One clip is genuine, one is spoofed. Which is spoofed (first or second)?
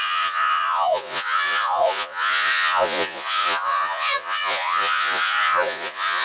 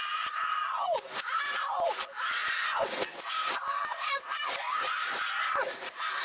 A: first